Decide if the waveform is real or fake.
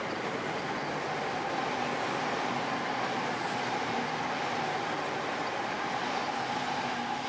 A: real